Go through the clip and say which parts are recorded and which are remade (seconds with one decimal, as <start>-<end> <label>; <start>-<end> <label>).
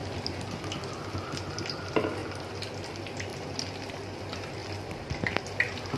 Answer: 0.0-6.0 recorded